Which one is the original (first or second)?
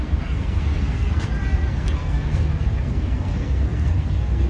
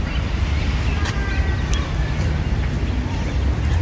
second